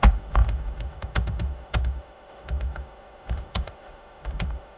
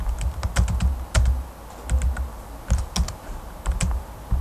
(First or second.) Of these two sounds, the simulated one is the first